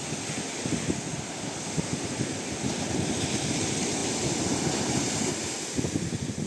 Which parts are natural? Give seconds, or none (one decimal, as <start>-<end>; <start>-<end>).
0.0-6.5